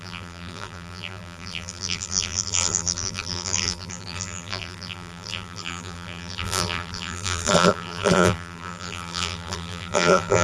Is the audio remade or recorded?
remade